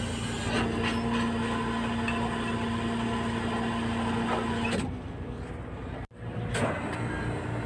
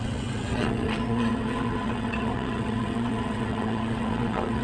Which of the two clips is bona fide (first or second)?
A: first